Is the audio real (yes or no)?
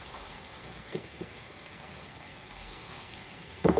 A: no